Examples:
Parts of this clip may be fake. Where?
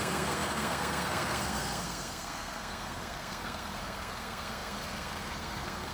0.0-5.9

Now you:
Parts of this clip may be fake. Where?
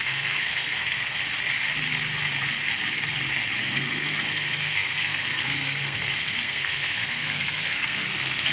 0.0-1.2; 3.6-8.5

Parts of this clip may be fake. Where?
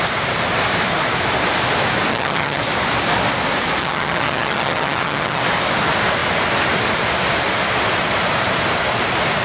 2.1-2.6; 3.8-5.4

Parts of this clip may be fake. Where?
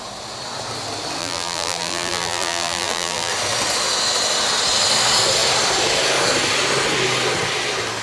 1.2-3.3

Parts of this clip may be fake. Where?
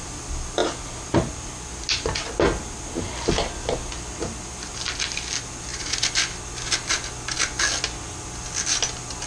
none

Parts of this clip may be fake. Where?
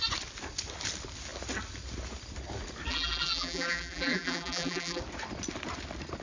2.9-5.0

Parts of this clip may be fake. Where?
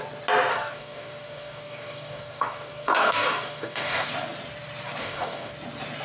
0.5-4.1; 5.0-5.5